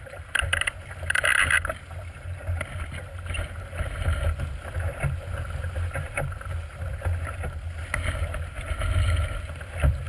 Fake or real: real